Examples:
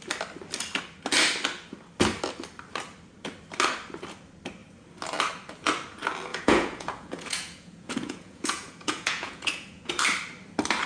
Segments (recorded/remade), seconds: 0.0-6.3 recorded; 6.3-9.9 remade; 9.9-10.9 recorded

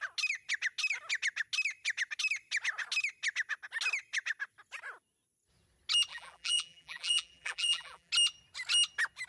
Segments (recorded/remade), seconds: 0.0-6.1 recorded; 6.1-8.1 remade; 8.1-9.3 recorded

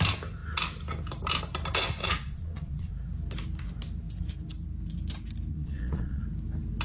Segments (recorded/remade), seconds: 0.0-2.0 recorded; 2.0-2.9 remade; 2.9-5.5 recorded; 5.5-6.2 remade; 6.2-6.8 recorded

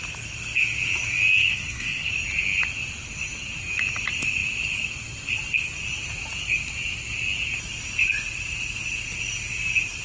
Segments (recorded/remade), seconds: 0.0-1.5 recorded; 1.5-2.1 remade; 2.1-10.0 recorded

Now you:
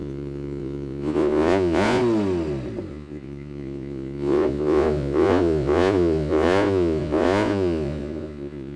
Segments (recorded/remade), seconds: 0.0-2.0 remade; 2.0-2.9 recorded; 2.9-8.8 remade